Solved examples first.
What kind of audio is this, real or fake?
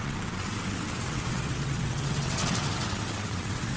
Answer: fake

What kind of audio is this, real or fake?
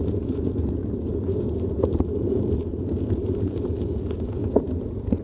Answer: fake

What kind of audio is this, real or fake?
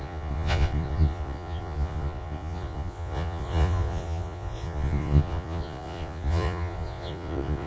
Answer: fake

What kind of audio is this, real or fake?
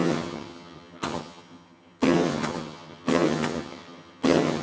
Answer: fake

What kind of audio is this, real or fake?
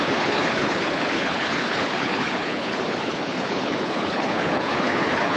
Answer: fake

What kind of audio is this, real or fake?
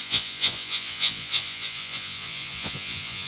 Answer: fake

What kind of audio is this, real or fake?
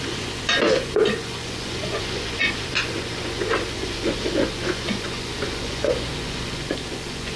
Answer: fake